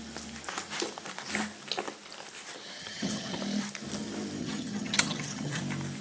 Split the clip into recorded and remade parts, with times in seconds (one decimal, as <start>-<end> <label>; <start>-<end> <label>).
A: 0.0-2.8 recorded; 2.8-3.4 remade; 3.4-4.4 recorded; 4.4-5.6 remade; 5.6-6.0 recorded